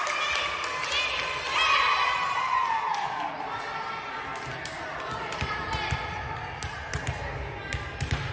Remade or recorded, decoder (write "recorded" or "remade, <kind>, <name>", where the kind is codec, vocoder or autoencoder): recorded